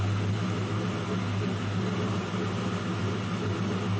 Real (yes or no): yes